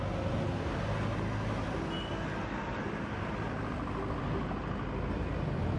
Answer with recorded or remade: recorded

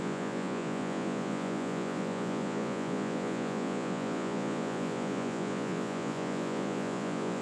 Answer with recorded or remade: remade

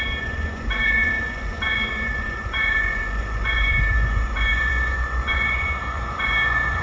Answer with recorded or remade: remade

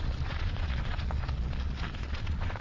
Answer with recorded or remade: remade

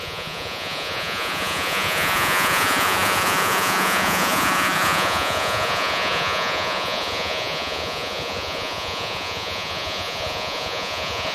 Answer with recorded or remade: remade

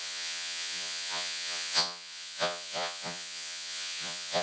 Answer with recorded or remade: remade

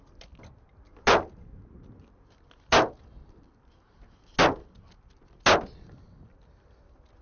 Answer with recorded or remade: recorded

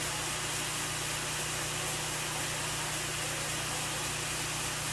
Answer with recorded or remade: recorded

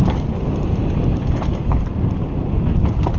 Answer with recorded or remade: recorded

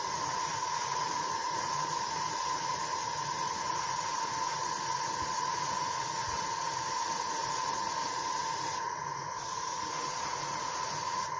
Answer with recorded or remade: remade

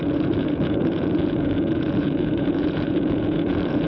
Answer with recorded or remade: remade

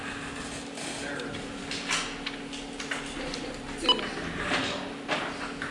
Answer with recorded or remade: recorded